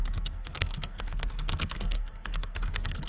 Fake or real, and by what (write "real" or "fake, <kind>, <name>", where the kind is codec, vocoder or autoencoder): fake, codec, SNAC